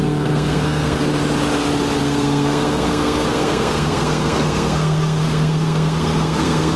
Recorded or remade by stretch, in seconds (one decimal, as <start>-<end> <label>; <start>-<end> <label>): 0.0-1.1 remade; 1.1-2.0 recorded; 2.0-6.8 remade

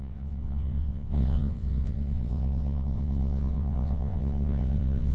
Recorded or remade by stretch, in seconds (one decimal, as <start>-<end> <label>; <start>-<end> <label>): 0.0-5.1 remade

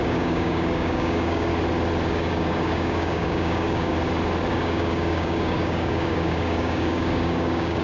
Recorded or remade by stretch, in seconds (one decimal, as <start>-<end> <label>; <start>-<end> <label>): 0.0-1.5 remade; 1.5-2.1 recorded; 2.1-3.9 remade; 3.9-4.5 recorded; 4.5-7.8 remade

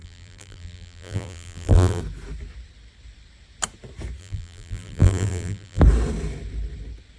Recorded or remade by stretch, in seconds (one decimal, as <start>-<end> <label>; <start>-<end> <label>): 0.0-2.0 remade; 2.0-4.2 recorded; 4.2-5.8 remade; 5.8-7.2 recorded

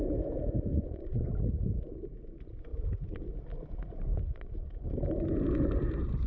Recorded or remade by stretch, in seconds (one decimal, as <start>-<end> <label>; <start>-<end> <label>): 0.0-0.7 recorded; 0.7-1.3 remade; 1.3-4.1 recorded; 4.1-4.7 remade; 4.7-6.3 recorded

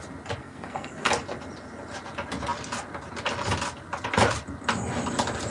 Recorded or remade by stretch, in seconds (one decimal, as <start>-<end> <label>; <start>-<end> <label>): 0.0-0.4 recorded; 0.4-1.1 remade; 1.1-5.5 recorded